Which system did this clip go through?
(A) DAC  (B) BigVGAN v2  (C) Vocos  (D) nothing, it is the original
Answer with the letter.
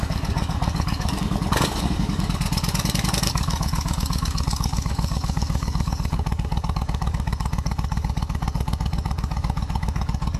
A